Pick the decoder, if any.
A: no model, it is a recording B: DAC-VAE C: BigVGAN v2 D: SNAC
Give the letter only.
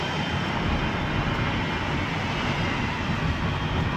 A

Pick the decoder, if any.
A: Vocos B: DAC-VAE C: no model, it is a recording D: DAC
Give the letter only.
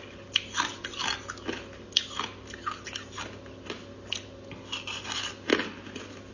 C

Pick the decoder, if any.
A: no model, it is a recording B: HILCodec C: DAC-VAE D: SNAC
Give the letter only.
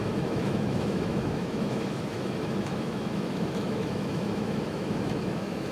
C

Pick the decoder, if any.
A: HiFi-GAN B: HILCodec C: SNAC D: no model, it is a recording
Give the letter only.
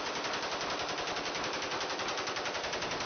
D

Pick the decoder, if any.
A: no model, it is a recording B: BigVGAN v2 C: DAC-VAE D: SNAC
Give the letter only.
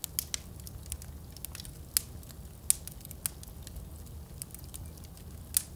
A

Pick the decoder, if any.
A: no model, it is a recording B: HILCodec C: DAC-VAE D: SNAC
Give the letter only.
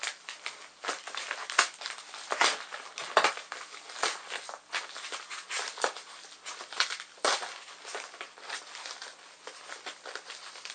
A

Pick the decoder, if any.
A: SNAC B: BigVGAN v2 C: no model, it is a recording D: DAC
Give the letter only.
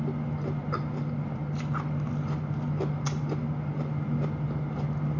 C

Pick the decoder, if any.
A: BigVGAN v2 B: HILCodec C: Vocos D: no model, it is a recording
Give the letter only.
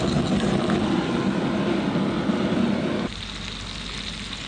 D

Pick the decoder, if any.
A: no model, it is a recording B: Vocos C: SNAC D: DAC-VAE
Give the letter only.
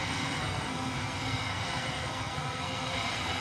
C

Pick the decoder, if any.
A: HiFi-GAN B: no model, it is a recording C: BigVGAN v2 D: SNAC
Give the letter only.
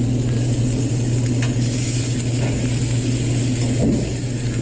B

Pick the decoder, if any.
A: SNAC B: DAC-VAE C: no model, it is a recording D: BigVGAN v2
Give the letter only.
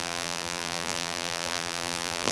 D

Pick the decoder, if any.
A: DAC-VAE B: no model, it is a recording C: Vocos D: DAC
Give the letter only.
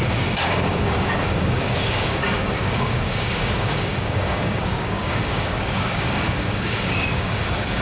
D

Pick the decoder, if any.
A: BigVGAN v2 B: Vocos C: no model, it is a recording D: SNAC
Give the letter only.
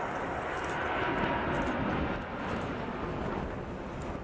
C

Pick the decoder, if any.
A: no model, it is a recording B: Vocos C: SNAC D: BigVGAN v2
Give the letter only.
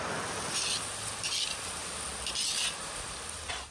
A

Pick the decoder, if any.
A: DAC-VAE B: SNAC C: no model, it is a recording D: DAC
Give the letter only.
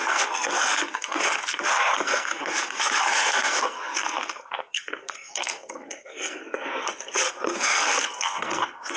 B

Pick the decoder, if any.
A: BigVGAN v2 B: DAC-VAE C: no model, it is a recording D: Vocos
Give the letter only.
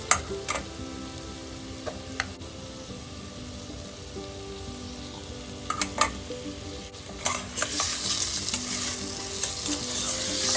C